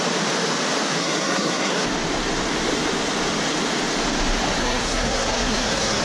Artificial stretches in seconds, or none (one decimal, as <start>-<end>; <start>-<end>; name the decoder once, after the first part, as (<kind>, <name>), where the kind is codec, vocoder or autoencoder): 1.0-1.7 (codec, SNAC); 4.6-6.0